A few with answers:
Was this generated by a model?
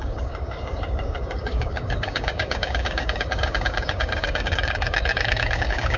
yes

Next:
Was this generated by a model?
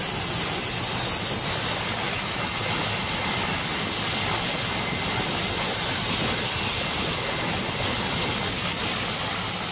no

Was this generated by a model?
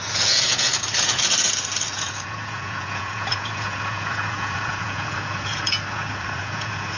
yes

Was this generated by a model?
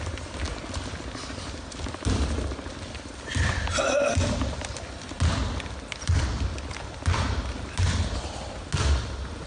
no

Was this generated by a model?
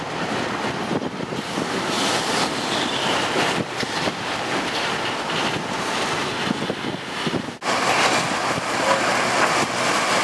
no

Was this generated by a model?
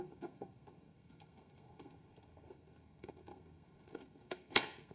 yes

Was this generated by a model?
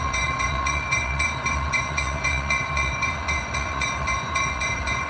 yes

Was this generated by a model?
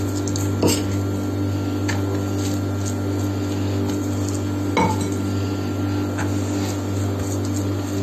no